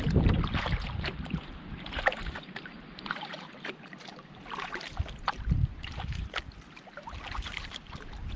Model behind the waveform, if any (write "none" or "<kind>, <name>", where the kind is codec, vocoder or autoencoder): vocoder, BigVGAN v2